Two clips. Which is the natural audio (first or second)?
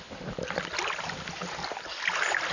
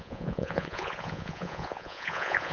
first